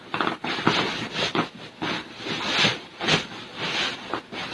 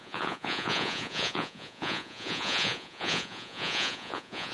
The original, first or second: first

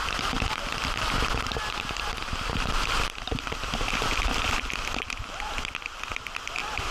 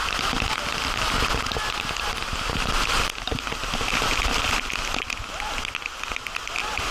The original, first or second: second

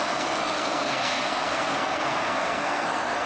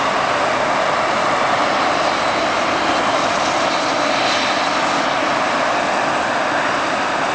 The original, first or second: second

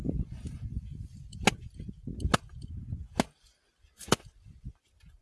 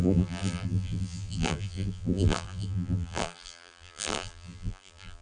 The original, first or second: first